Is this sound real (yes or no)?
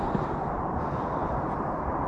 yes